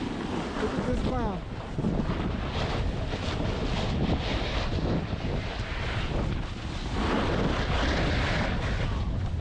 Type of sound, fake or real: real